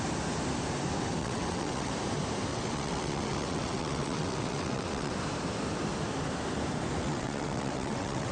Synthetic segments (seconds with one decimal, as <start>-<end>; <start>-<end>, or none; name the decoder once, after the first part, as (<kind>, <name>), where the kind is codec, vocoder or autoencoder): 1.2-1.9 (vocoder, WaveNeXt); 2.5-5.1; 7.0-8.3